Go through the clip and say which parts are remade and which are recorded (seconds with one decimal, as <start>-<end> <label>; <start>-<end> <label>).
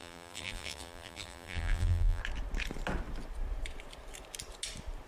0.0-2.2 remade; 2.2-5.1 recorded